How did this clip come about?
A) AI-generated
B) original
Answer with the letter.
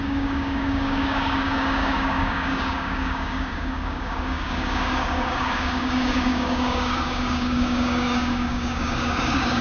A